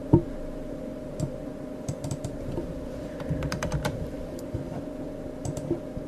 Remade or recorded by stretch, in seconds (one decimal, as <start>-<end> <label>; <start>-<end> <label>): 0.0-1.0 remade; 1.0-1.4 recorded; 1.4-5.1 remade; 5.1-6.1 recorded